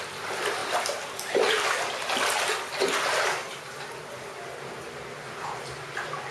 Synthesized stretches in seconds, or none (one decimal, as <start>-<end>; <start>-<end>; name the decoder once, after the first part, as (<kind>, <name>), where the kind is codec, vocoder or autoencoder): none